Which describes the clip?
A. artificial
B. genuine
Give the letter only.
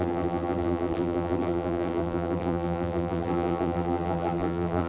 A